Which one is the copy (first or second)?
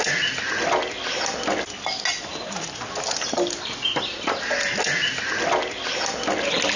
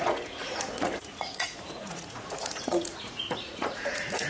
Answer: second